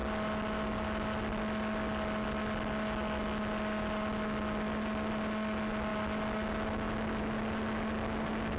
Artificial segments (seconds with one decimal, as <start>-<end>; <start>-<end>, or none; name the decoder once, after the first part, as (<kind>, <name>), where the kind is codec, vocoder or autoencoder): none